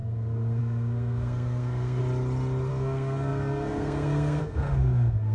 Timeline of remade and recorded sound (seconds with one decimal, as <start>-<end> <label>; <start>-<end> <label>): 0.0-2.0 remade; 2.0-2.7 recorded; 2.7-5.3 remade